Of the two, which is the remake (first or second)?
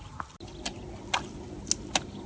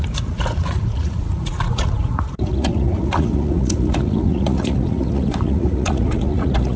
second